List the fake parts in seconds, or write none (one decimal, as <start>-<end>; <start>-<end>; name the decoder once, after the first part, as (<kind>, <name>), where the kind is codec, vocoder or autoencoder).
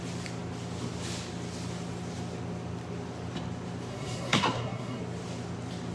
3.9-5.0 (codec, SNAC)